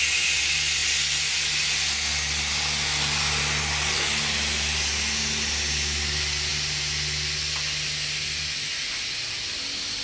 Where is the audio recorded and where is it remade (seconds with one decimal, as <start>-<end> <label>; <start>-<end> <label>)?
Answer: 0.0-10.0 recorded